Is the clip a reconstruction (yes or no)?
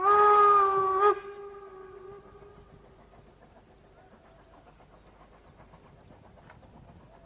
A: no